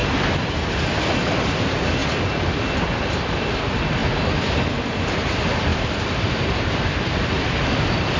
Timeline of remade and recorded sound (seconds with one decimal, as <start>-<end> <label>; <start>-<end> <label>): 0.0-1.4 recorded; 1.4-2.0 remade; 2.0-2.7 recorded; 2.7-4.0 remade; 4.0-5.1 recorded; 5.1-8.2 remade